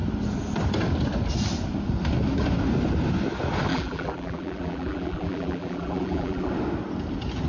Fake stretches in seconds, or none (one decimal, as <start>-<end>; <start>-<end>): 3.7-6.5